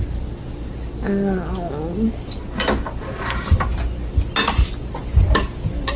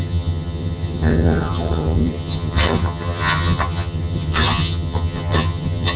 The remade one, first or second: second